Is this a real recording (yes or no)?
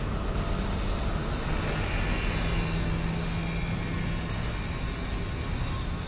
yes